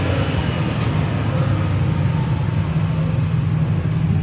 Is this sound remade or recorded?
recorded